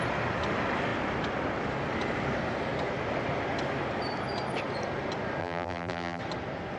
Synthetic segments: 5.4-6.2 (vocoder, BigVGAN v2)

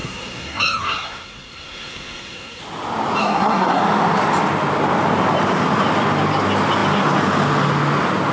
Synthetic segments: 0.0-2.6 (codec, SNAC); 3.2-3.8